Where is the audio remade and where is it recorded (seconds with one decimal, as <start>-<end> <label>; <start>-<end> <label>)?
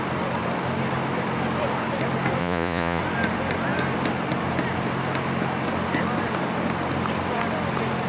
0.0-2.4 recorded; 2.4-3.0 remade; 3.0-8.1 recorded